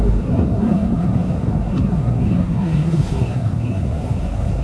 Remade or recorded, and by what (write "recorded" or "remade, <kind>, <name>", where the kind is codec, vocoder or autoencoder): remade, codec, SNAC